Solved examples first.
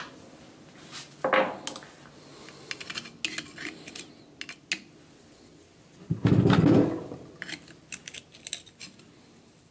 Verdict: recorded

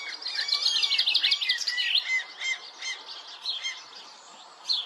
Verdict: recorded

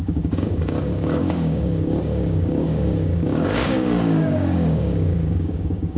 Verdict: remade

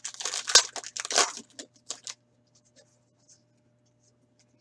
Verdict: recorded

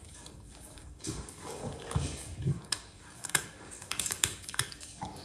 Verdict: remade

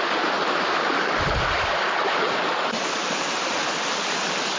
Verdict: recorded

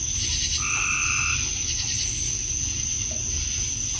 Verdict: recorded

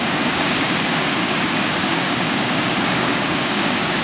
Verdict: remade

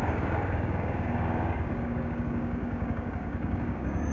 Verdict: remade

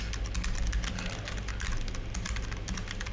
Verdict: recorded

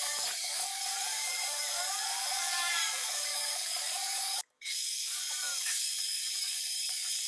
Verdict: remade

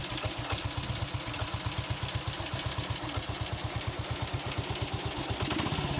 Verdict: recorded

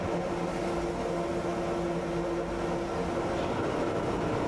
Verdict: recorded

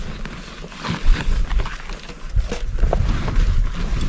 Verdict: recorded